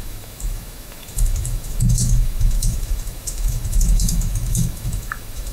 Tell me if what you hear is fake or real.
fake